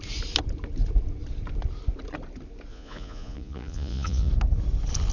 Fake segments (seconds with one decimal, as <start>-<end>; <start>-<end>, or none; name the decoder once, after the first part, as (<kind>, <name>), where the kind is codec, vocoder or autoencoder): 2.7-4.3 (vocoder, Vocos)